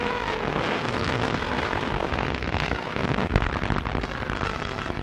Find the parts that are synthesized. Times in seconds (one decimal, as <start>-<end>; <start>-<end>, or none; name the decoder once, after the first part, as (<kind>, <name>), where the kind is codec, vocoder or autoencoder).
0.5-3.5 (codec, SNAC)